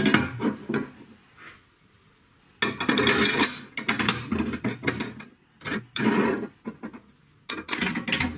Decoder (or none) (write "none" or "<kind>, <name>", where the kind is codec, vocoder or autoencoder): none